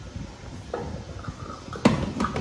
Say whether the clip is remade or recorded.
recorded